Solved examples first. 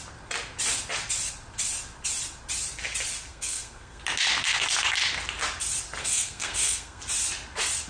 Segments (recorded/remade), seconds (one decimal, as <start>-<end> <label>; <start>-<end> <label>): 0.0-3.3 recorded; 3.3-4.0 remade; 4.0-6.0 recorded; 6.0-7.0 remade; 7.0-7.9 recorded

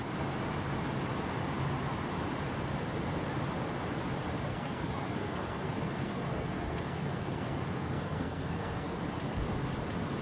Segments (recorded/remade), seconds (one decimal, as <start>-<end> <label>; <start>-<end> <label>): 0.0-4.5 recorded; 4.5-9.0 remade; 9.0-10.2 recorded

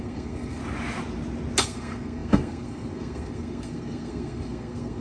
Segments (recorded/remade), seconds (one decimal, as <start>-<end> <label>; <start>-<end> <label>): 0.0-0.6 remade; 0.6-1.6 recorded; 1.6-5.0 remade

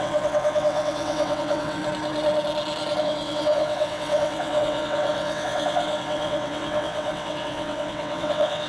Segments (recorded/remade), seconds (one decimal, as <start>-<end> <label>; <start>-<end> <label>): 0.0-1.8 remade; 1.8-3.0 recorded; 3.0-8.7 remade

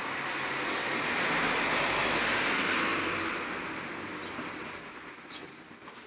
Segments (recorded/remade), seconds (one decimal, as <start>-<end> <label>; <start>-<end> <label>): 0.0-6.1 recorded